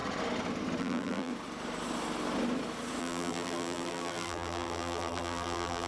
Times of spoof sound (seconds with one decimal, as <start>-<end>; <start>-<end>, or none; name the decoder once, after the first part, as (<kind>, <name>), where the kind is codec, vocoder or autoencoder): 0.8-1.3 (vocoder, BigVGAN v2); 3.0-5.9